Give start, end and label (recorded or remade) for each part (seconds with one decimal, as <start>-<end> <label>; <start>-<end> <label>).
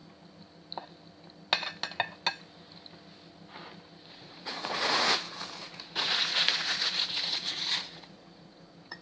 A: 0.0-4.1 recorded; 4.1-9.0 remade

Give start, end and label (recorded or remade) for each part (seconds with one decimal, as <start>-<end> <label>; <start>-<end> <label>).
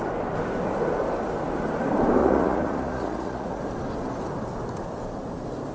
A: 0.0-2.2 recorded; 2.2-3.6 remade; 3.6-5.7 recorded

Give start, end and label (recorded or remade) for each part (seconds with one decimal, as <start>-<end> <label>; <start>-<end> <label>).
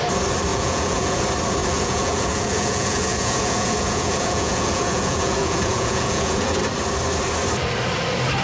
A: 0.0-0.5 recorded; 0.5-1.2 remade; 1.2-1.6 recorded; 1.6-6.6 remade; 6.6-8.4 recorded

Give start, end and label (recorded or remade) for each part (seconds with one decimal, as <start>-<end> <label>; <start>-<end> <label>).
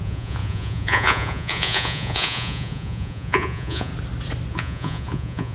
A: 0.0-3.9 remade; 3.9-4.5 recorded; 4.5-5.5 remade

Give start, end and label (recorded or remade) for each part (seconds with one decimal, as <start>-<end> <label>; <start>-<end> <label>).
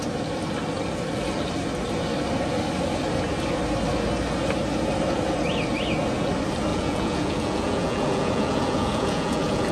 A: 0.0-6.7 recorded; 6.7-9.7 remade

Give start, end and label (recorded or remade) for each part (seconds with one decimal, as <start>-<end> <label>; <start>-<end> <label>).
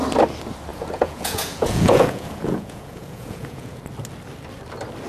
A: 0.0-0.7 recorded; 0.7-3.8 remade; 3.8-5.1 recorded